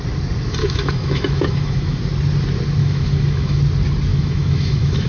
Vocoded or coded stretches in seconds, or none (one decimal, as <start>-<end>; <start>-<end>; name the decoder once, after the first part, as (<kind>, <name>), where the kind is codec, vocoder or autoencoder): 0.6-2.0 (autoencoder, DAC-VAE); 2.8-3.6; 4.1-5.1